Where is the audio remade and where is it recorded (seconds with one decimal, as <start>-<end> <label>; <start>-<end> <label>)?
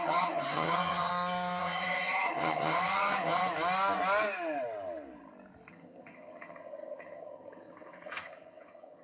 0.0-1.1 remade; 1.1-1.6 recorded; 1.6-3.4 remade; 3.4-5.7 recorded; 5.7-9.0 remade